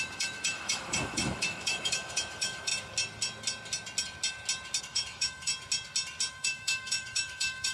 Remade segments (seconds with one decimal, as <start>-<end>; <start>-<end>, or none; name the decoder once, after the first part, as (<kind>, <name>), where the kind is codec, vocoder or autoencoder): 0.0-2.7 (autoencoder, DAC-VAE); 4.8-5.5; 6.3-7.7

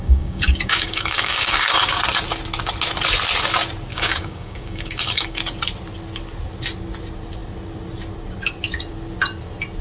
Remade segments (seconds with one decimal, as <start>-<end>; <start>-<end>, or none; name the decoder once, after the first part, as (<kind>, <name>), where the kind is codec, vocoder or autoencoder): 0.0-2.0 (codec, DAC); 3.9-5.4

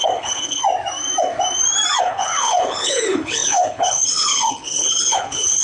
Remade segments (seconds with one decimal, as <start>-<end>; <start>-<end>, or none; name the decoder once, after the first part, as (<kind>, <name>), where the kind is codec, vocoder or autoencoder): 0.0-0.6 (codec, HILCodec); 2.0-5.6

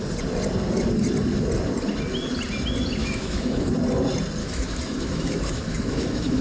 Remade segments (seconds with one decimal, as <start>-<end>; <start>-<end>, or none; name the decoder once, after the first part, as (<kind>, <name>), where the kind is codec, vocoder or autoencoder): 3.0-3.7 (autoencoder, DAC-VAE); 4.4-6.4

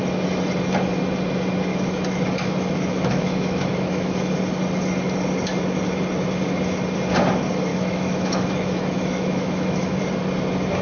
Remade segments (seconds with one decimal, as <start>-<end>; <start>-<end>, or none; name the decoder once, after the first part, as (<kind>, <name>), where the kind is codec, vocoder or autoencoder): 1.7-4.3 (autoencoder, DAC-VAE); 7.7-10.0

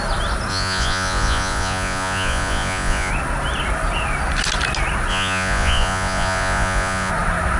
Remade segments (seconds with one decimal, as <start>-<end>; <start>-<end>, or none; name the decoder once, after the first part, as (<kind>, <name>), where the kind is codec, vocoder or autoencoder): 0.5-3.1 (vocoder, Vocos); 5.1-7.1